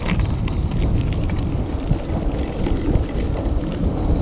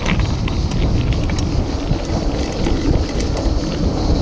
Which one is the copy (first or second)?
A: first